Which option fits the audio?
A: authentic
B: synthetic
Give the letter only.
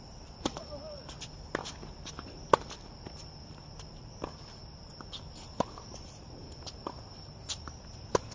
A